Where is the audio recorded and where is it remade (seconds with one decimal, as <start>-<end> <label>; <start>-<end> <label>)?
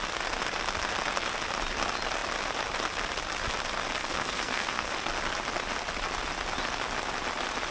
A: 0.0-4.0 recorded; 4.0-4.9 remade; 4.9-7.7 recorded